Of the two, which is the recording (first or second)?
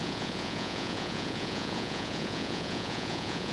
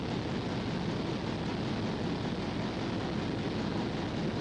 second